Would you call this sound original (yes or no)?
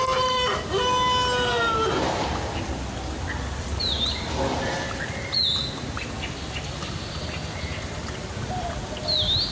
yes